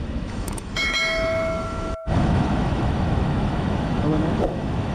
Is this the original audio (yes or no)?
no